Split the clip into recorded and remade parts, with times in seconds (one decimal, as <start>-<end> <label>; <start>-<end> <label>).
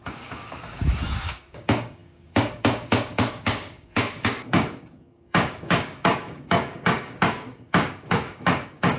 0.0-9.0 remade